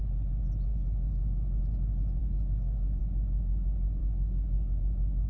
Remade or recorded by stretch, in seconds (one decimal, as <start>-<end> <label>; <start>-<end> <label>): 0.0-0.7 recorded; 0.7-1.6 remade; 1.6-2.2 recorded; 2.2-3.0 remade; 3.0-4.0 recorded; 4.0-4.8 remade; 4.8-5.3 recorded